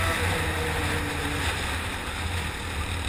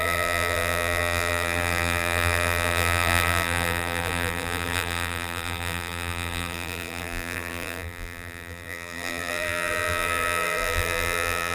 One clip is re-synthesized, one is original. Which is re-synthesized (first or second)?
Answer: second